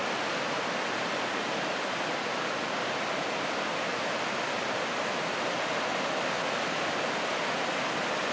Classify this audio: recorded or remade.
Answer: recorded